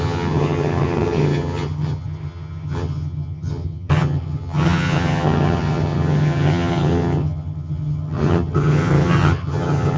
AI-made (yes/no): yes